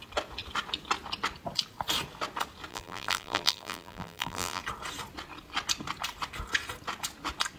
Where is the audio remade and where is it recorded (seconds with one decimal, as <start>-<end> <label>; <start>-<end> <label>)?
0.0-2.7 recorded; 2.7-4.6 remade; 4.6-7.6 recorded